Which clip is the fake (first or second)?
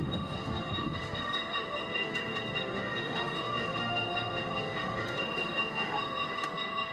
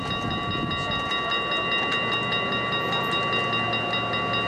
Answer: first